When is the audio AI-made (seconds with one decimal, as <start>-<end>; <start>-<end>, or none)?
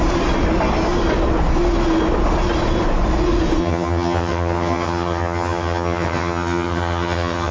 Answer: 3.6-7.5